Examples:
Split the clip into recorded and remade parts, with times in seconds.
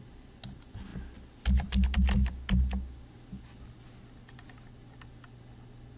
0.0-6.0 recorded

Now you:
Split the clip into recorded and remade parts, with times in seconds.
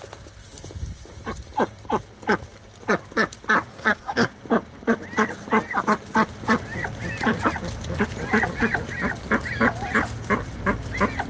0.0-3.7 recorded; 3.7-4.3 remade; 4.3-11.3 recorded